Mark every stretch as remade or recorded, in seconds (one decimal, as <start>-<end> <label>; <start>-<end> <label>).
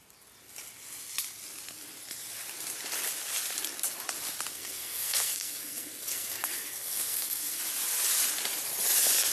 0.0-4.5 recorded; 4.5-7.6 remade; 7.6-9.3 recorded